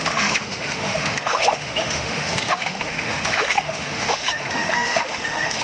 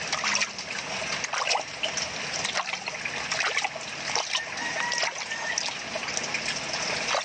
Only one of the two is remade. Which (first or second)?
first